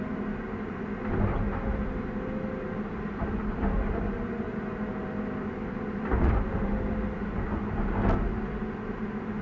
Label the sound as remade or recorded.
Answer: recorded